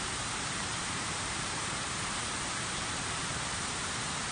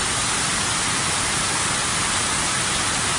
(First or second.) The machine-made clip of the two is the first